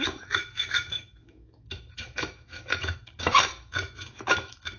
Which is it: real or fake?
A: fake